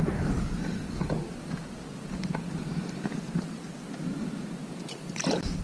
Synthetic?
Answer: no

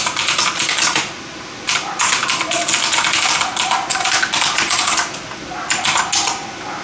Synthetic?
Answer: no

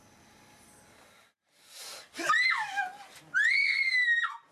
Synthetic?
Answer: no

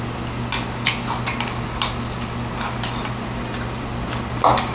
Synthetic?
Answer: no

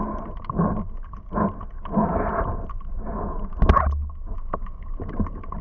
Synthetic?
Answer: no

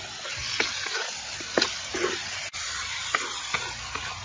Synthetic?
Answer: no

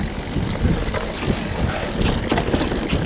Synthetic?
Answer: no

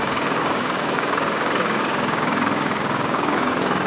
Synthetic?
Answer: yes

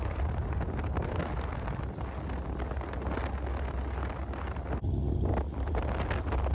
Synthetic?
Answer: no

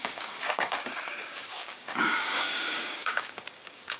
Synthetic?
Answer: yes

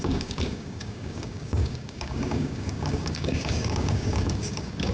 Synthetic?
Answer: yes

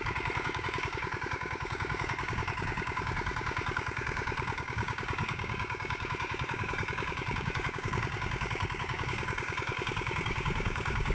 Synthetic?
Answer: yes